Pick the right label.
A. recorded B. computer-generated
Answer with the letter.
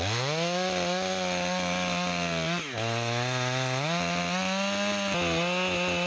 A